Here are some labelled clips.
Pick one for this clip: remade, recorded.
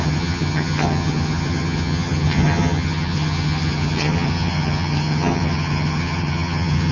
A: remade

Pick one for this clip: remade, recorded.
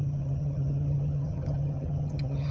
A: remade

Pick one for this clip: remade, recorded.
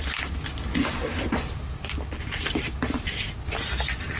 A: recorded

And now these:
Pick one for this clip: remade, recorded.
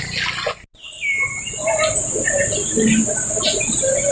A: recorded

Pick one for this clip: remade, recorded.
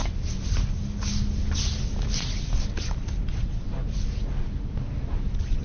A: recorded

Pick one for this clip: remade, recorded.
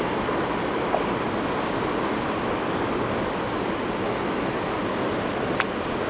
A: recorded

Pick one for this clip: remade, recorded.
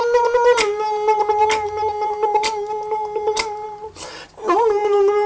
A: recorded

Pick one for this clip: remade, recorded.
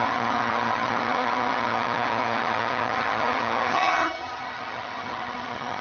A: remade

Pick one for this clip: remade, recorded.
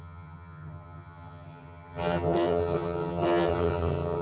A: remade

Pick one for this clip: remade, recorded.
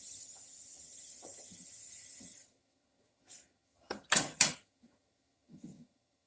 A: remade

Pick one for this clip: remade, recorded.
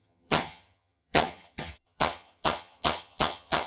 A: remade